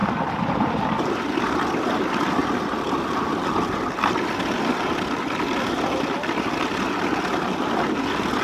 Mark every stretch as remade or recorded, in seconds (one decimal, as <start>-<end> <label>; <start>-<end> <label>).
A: 0.0-2.4 recorded; 2.4-3.2 remade; 3.2-8.4 recorded